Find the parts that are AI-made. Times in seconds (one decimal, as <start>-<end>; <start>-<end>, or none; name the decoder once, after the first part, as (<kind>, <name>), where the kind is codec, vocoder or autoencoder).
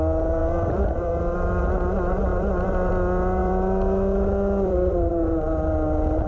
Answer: 0.4-1.1 (vocoder, BigVGAN v2); 2.3-2.9; 3.4-5.1